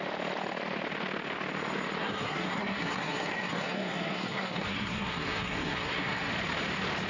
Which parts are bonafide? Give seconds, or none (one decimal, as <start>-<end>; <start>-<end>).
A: 0.0-2.0; 6.3-7.1